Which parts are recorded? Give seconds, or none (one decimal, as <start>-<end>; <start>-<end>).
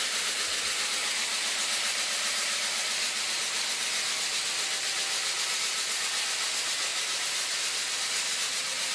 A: 0.0-8.9